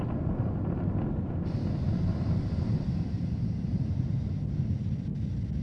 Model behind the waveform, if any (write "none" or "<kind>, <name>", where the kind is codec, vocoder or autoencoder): none